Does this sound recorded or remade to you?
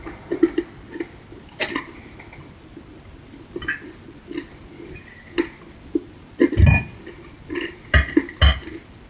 recorded